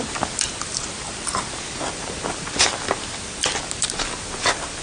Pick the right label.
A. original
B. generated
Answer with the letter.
A